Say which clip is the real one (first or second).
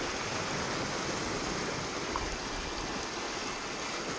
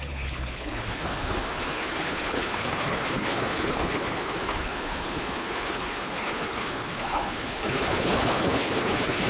first